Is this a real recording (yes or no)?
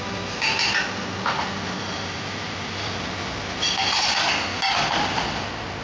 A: yes